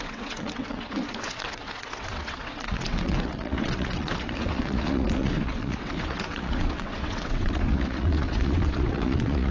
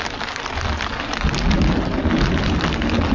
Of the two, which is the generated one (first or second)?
first